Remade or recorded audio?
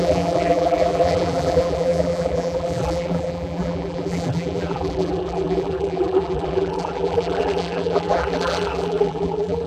remade